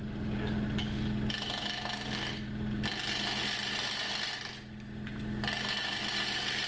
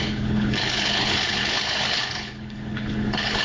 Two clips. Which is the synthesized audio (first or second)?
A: second